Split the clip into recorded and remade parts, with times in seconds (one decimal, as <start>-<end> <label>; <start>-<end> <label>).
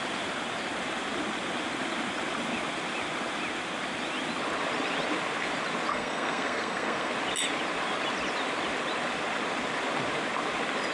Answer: 0.0-5.9 recorded; 5.9-7.1 remade; 7.1-10.9 recorded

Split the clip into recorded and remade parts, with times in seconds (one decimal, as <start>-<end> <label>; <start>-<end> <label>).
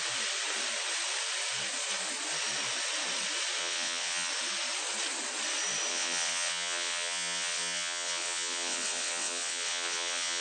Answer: 0.0-3.6 recorded; 3.6-4.3 remade; 4.3-5.9 recorded; 5.9-10.4 remade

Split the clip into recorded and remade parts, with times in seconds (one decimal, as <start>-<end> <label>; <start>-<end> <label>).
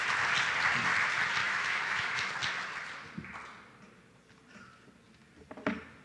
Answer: 0.0-1.4 recorded; 1.4-2.3 remade; 2.3-6.0 recorded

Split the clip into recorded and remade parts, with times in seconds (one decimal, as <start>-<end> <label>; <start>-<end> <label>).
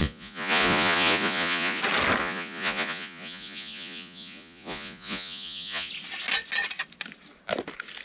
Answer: 0.0-1.8 remade; 1.8-2.2 recorded; 2.2-5.9 remade; 5.9-8.0 recorded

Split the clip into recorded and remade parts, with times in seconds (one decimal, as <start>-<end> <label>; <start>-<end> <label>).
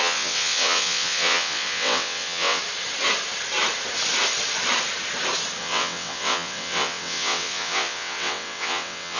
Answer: 0.0-2.6 remade; 2.6-5.6 recorded; 5.6-9.2 remade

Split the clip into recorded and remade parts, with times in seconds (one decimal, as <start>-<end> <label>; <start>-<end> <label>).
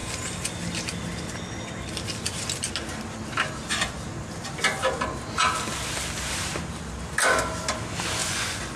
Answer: 0.0-8.2 recorded; 8.2-8.8 remade